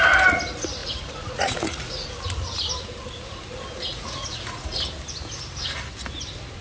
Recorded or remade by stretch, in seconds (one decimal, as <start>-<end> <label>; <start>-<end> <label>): 0.0-0.8 recorded; 0.8-2.1 remade; 2.1-3.9 recorded; 3.9-4.8 remade; 4.8-6.6 recorded